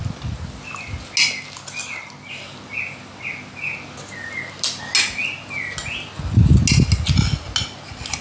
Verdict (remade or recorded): recorded